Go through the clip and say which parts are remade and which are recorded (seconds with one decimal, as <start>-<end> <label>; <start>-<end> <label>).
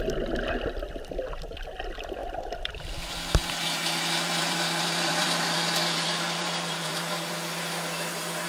0.0-2.2 recorded; 2.2-2.8 remade; 2.8-3.4 recorded; 3.4-7.3 remade; 7.3-8.5 recorded